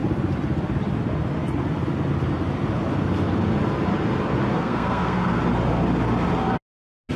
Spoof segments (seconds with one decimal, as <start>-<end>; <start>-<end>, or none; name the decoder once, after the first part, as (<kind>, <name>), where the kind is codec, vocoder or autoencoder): 4.5-5.4 (codec, SNAC)